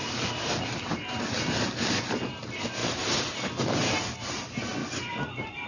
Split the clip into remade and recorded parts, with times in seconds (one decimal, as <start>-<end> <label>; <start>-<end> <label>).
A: 0.0-2.8 recorded; 2.8-4.0 remade; 4.0-4.8 recorded; 4.8-5.7 remade